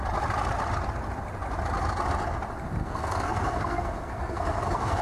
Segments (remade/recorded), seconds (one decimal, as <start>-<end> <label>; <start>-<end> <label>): 0.0-2.8 recorded; 2.8-5.0 remade